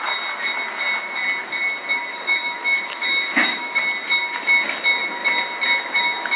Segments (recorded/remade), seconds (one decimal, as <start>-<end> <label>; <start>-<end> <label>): 0.0-2.1 recorded; 2.1-3.8 remade; 3.8-6.4 recorded